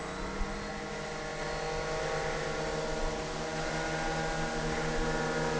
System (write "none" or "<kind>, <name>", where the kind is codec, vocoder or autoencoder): none